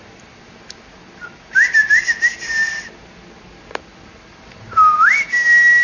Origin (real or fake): real